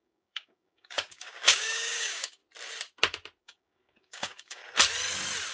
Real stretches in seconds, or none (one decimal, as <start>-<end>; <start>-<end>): 2.4-3.4; 4.6-5.5